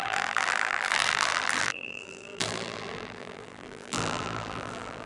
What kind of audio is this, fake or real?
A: fake